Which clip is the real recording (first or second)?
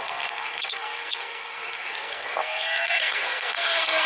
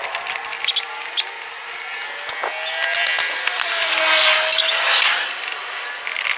second